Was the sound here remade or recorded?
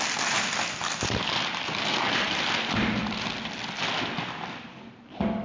remade